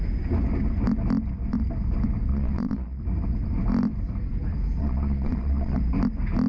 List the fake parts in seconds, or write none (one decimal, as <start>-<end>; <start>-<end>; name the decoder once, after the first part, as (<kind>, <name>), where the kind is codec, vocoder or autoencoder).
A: 2.3-3.0 (vocoder, Vocos); 4.8-5.8